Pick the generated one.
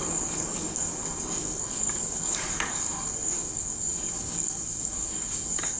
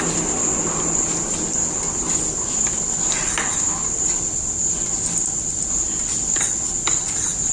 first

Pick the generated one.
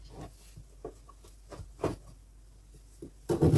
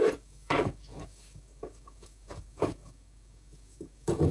second